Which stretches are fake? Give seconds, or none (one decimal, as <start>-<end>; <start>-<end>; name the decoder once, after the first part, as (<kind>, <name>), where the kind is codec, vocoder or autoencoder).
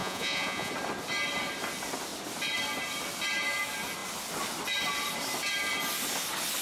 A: 0.0-0.7 (vocoder, Vocos)